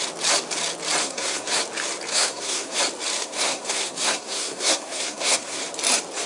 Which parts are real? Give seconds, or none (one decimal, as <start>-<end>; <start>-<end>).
0.0-1.0; 1.6-2.1; 2.8-3.2; 5.6-6.3